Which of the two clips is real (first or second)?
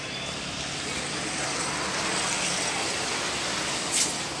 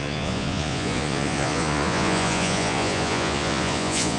first